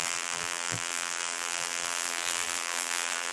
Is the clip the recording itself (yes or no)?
no